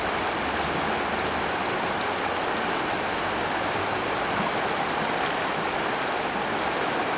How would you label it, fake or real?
real